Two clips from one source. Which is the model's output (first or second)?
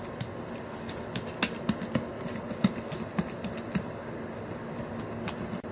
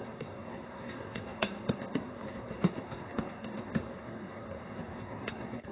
second